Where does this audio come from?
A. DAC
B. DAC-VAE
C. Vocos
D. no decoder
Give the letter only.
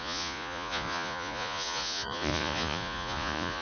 C